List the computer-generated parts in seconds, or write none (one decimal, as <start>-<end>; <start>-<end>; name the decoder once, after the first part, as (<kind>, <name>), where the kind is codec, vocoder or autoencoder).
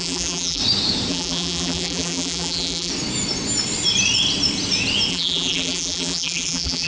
0.0-0.6 (vocoder, BigVGAN v2); 1.1-2.9; 5.1-6.9